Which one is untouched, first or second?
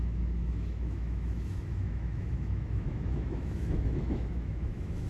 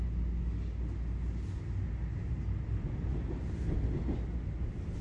second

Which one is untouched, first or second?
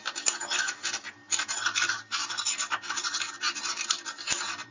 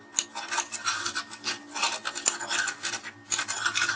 second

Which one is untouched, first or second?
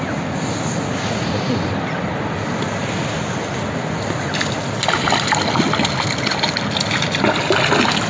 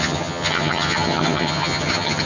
first